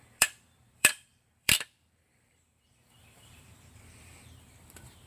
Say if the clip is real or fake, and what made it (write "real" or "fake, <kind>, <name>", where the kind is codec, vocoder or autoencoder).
fake, vocoder, BigVGAN v2